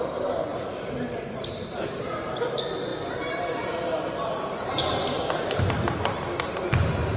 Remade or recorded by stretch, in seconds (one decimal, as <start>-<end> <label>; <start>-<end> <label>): 0.0-7.2 remade